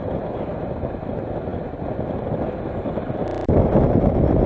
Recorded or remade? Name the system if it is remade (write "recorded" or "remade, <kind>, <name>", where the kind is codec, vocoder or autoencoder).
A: recorded